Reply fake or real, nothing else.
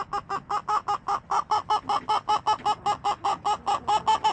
real